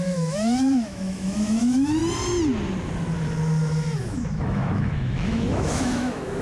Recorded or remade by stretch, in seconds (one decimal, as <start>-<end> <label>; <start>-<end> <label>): 0.0-2.0 remade; 2.0-4.0 recorded; 4.0-6.4 remade